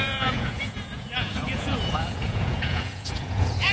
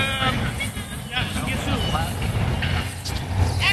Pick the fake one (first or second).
first